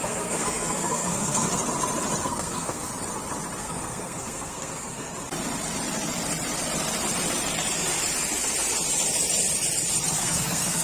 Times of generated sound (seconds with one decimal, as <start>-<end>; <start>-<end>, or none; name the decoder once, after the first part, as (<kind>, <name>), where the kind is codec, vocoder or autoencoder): 0.0-1.5 (codec, SNAC); 2.2-2.9; 3.6-5.1; 10.2-10.8